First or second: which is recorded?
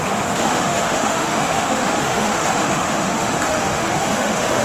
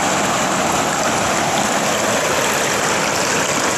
second